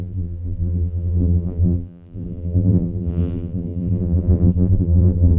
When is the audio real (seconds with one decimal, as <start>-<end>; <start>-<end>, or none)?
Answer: none